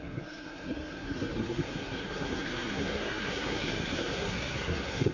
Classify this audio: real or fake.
fake